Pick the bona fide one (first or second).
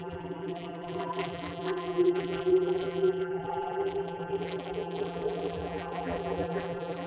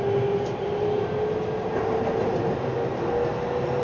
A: second